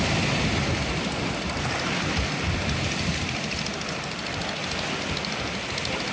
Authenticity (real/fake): real